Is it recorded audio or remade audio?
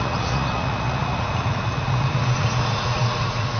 remade